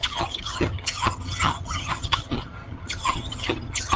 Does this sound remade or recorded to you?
remade